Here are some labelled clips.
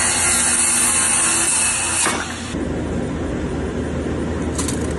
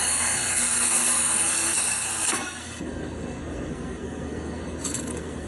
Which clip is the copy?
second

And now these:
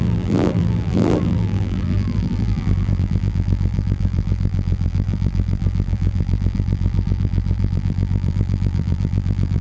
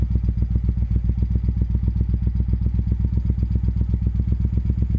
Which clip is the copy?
first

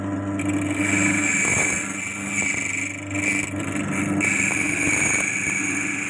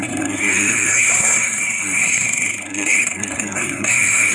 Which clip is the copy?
second